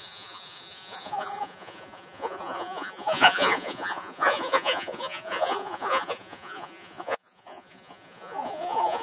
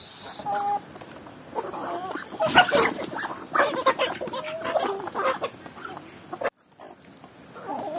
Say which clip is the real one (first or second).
second